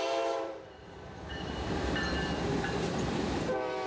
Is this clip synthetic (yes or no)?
yes